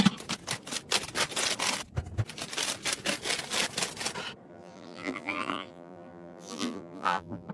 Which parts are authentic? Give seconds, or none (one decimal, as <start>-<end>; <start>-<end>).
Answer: 0.0-4.5

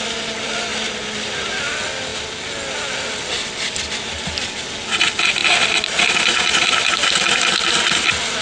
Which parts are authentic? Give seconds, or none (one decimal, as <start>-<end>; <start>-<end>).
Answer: 0.0-0.7; 1.5-8.4

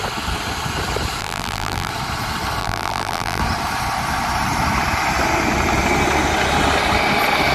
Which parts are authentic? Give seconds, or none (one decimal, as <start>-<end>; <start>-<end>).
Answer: 0.0-1.2; 1.9-2.6; 3.4-7.5

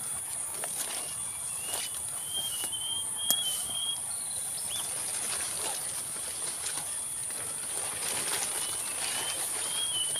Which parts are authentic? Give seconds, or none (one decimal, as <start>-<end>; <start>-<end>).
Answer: 0.0-10.2

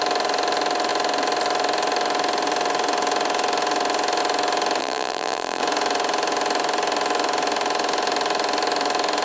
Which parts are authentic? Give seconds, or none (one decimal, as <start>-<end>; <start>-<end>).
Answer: 0.0-4.8; 5.6-9.2

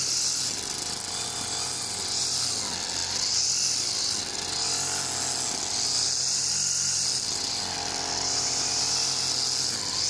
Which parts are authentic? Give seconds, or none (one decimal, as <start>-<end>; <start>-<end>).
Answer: 0.0-10.1